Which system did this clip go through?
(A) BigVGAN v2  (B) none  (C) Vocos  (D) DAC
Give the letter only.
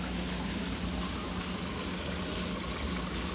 B